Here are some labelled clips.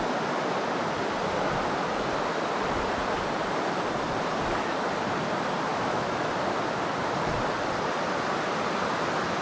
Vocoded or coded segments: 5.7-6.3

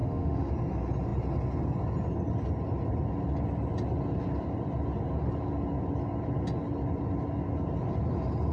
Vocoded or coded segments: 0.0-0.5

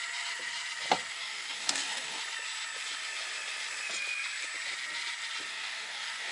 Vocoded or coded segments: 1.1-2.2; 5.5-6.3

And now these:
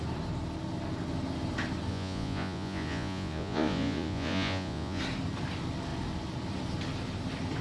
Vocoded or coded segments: 1.9-5.0

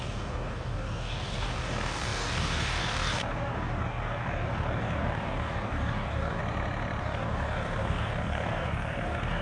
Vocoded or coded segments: 0.0-6.4; 7.0-9.4

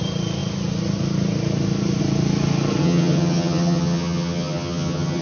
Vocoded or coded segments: 2.8-5.2